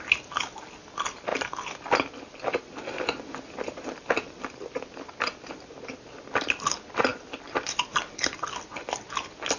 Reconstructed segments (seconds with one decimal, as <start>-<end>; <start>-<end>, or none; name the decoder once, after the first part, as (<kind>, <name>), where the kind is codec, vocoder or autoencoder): none